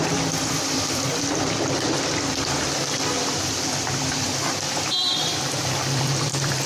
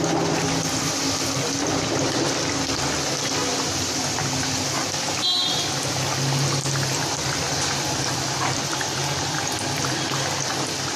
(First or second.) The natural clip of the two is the second